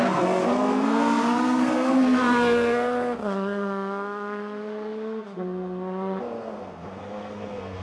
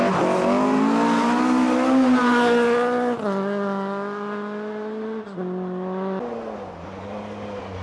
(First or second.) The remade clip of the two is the first